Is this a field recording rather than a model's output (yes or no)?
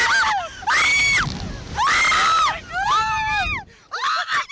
yes